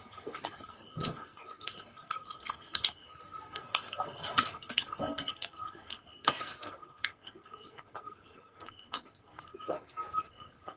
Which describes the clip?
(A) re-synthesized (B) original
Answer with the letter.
A